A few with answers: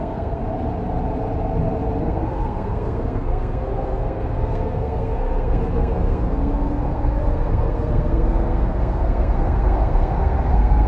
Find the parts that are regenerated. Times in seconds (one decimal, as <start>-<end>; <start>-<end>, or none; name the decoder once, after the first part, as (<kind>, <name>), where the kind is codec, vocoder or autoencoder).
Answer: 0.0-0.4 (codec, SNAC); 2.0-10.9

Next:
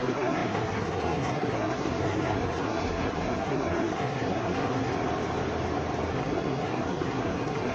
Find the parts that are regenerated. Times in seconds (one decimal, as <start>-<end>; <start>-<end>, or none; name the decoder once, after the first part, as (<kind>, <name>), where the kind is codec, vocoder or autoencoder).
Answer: 0.0-4.9 (codec, SNAC); 6.1-7.7

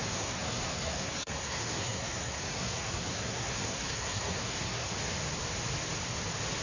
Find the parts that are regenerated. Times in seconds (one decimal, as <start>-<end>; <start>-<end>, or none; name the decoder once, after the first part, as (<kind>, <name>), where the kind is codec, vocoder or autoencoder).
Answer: 0.0-4.9 (codec, SNAC)

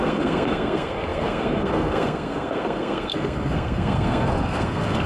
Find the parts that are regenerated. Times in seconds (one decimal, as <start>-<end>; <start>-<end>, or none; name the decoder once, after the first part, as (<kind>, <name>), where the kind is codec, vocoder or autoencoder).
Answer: 0.0-5.1 (codec, SNAC)